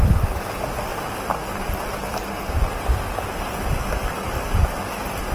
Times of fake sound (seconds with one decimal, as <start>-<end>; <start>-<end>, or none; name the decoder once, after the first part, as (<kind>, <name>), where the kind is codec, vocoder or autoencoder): 0.9-4.1 (vocoder, BigVGAN v2)